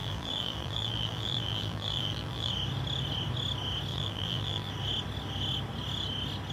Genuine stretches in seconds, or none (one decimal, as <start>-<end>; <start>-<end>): 2.5-3.9; 4.7-6.5